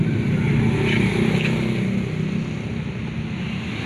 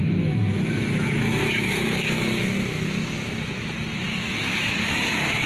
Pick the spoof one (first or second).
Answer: second